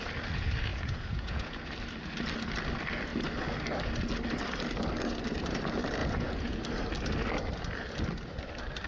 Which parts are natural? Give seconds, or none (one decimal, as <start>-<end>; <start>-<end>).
0.0-0.7; 1.7-6.0; 6.6-8.9